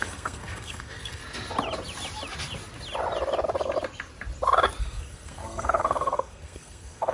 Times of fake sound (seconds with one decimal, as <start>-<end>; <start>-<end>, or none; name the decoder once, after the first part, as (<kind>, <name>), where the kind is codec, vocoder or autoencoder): 0.0-1.2 (codec, SNAC); 4.8-7.1

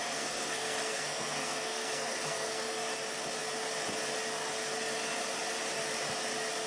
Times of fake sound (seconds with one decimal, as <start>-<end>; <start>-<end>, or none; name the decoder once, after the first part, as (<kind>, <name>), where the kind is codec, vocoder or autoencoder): 0.0-2.9 (codec, SNAC)

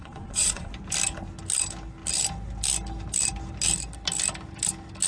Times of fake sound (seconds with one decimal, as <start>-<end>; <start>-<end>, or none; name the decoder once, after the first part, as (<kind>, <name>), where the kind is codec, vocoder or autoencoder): 0.0-0.7 (vocoder, Vocos)

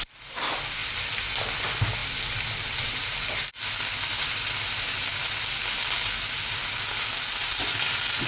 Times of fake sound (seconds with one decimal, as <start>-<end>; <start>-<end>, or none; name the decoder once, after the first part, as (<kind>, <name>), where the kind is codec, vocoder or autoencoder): 0.8-1.4 (vocoder, BigVGAN v2); 2.0-3.5; 4.1-5.1

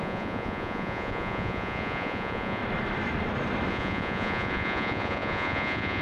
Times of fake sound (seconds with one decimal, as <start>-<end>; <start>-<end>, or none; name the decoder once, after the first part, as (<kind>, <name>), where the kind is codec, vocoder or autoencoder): 0.0-2.6 (vocoder, Vocos); 3.7-6.0

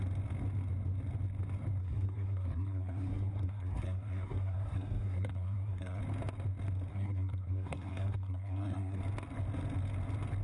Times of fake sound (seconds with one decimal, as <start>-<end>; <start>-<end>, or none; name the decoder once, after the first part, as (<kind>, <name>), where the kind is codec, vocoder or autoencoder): 1.8-6.0 (codec, SNAC); 6.9-9.0

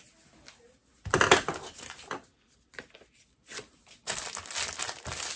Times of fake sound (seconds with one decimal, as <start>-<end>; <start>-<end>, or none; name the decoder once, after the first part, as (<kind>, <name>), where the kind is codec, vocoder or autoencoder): none